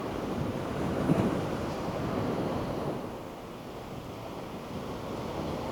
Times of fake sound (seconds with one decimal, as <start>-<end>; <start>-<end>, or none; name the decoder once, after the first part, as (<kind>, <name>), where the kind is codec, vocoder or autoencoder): 0.0-3.2 (vocoder, BigVGAN v2)